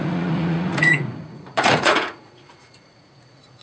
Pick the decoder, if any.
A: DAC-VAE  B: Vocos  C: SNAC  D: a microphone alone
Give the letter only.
B